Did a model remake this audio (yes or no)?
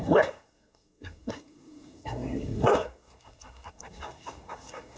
yes